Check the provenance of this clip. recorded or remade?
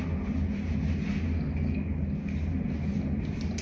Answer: recorded